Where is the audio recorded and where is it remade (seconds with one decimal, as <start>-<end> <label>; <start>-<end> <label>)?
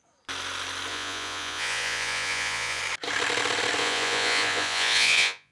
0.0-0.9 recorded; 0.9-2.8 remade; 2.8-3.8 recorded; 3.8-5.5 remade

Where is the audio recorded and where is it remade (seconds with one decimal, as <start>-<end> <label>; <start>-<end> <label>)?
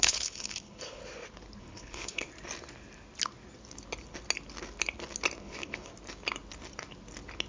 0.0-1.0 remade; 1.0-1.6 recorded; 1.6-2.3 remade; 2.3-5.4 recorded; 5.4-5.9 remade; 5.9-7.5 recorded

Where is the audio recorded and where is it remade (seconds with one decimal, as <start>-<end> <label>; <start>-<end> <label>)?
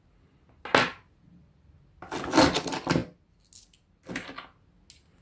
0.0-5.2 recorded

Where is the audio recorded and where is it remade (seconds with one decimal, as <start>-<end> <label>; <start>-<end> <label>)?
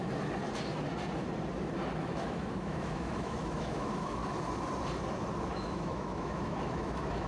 0.0-2.0 recorded; 2.0-4.2 remade; 4.2-5.4 recorded; 5.4-7.3 remade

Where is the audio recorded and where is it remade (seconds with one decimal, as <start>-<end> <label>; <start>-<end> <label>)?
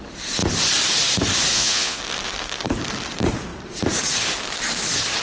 0.0-1.5 recorded; 1.5-2.0 remade; 2.0-5.2 recorded